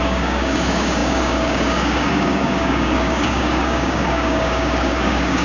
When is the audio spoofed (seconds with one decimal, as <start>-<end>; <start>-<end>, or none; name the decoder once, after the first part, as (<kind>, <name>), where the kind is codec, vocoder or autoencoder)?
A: 0.0-5.4 (codec, DAC)